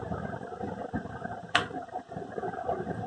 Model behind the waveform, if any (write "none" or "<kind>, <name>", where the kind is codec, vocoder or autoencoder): vocoder, BigVGAN v2